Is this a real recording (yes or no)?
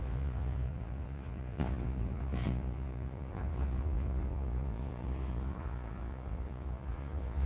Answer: no